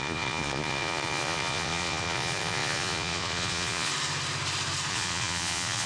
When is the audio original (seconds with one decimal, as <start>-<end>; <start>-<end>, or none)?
3.9-4.9